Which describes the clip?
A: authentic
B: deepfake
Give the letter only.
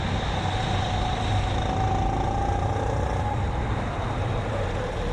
A